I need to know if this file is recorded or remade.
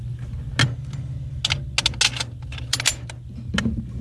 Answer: recorded